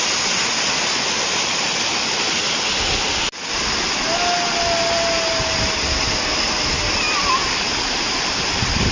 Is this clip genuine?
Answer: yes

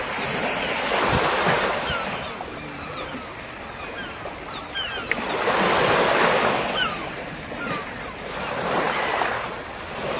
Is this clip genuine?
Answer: yes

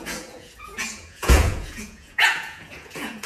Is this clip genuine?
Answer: no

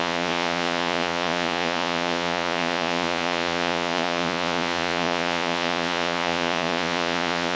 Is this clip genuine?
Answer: no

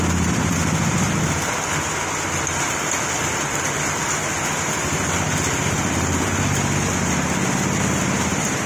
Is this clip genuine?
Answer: yes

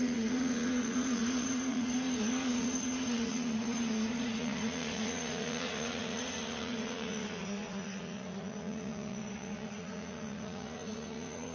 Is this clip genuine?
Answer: no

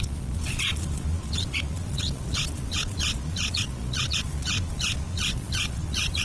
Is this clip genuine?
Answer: no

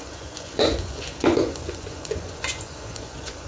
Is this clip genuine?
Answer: no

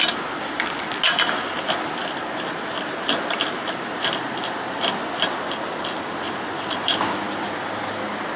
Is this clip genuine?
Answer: yes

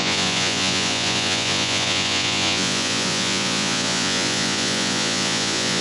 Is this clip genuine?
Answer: no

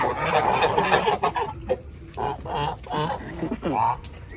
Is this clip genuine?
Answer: yes